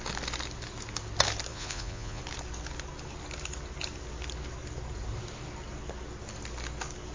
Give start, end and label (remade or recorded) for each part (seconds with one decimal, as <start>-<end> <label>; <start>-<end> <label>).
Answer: 0.0-1.5 recorded; 1.5-2.2 remade; 2.2-7.1 recorded